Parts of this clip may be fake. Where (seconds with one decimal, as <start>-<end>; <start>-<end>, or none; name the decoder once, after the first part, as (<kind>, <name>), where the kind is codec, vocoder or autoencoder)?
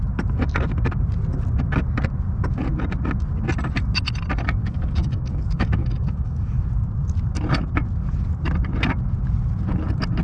4.6-6.6 (codec, DAC)